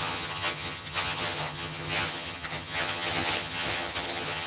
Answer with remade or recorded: remade